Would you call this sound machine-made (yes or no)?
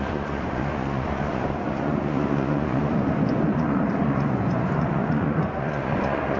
yes